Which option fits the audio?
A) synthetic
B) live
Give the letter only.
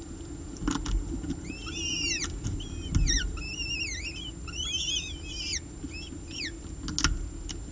B